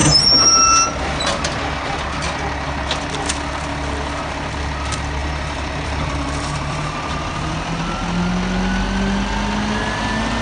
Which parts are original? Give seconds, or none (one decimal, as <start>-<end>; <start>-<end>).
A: 0.0-5.2; 7.3-10.4